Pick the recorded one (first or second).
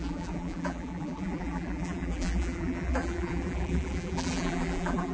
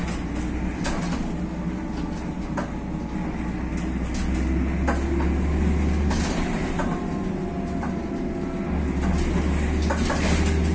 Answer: second